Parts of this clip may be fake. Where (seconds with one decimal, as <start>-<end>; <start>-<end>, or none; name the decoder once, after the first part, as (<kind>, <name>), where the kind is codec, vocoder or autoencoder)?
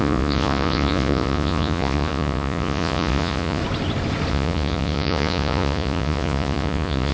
0.0-3.6 (vocoder, Vocos); 4.3-7.1